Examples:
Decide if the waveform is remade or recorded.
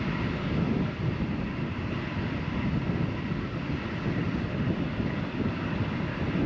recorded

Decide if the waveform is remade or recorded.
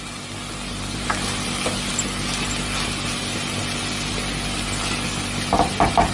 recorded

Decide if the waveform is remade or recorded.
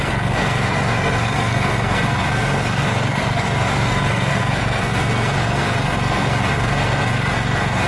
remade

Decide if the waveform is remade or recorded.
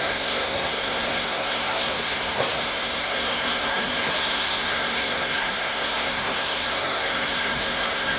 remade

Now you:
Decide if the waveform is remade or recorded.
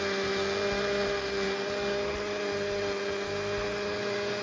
recorded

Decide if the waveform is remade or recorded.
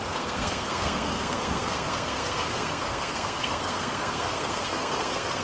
remade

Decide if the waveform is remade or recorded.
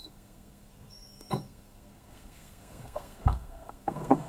remade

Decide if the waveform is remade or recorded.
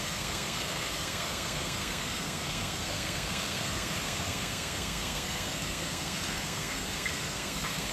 remade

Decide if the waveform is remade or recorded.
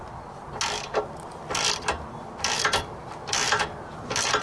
recorded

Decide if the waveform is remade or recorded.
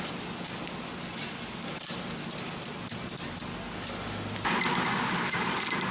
recorded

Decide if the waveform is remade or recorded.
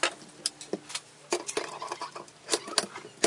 recorded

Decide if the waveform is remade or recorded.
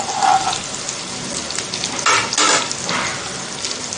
recorded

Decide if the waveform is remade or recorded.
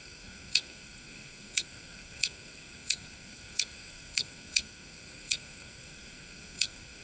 remade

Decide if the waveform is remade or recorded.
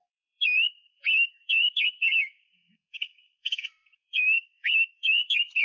remade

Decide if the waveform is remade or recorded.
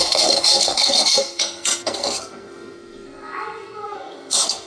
remade